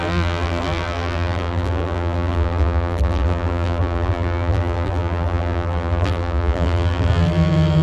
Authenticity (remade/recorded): remade